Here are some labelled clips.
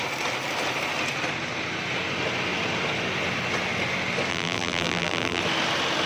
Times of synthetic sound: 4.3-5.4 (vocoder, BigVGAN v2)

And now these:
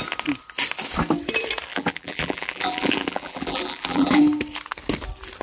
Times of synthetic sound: 1.7-4.2 (vocoder, BigVGAN v2)

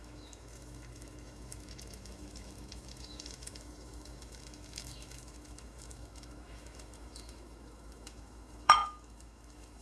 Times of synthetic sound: 0.0-9.8 (autoencoder, DAC-VAE)